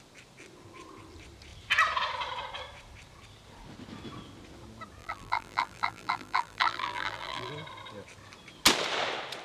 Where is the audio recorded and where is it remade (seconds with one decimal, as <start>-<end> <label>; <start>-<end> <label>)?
0.0-5.0 recorded; 5.0-7.5 remade; 7.5-9.4 recorded